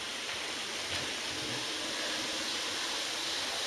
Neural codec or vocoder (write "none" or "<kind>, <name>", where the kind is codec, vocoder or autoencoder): none